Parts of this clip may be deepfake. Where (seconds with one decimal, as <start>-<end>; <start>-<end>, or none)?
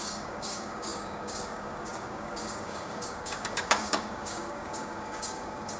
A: 0.0-5.8